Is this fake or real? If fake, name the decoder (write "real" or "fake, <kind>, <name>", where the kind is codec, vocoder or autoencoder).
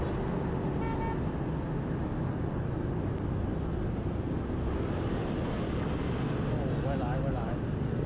real